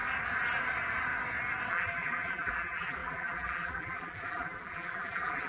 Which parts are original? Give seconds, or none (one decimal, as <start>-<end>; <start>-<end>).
0.0-1.7